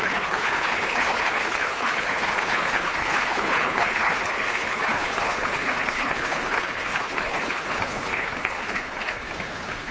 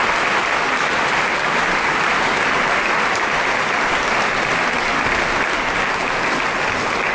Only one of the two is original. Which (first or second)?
second